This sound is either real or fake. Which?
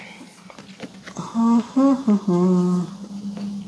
real